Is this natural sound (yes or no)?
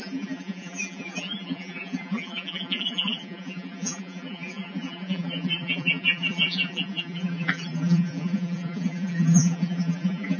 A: no